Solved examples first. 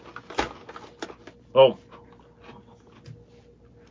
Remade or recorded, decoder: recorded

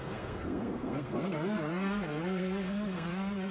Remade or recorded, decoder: remade, codec, SNAC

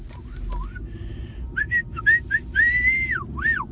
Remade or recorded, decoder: recorded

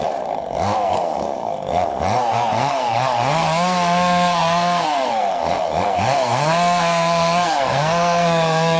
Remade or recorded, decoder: remade, codec, SNAC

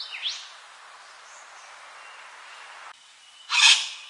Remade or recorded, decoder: recorded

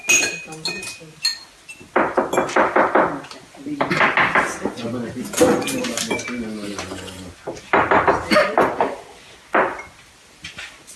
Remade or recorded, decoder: recorded